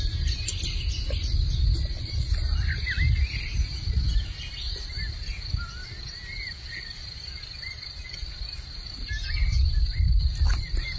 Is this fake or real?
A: real